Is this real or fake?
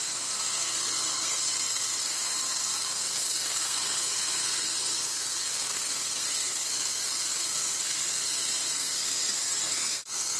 fake